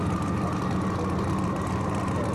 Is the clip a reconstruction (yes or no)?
no